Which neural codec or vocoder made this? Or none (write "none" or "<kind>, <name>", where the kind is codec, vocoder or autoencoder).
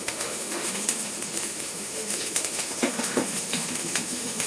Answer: autoencoder, DAC-VAE